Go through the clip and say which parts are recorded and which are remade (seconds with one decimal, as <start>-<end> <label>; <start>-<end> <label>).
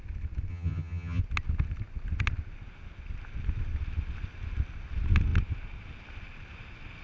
0.0-0.5 recorded; 0.5-1.2 remade; 1.2-7.0 recorded